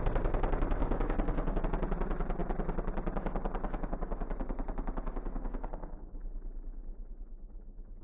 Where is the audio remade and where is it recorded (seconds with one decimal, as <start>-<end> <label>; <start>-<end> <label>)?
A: 0.0-0.8 recorded; 0.8-1.6 remade; 1.6-8.0 recorded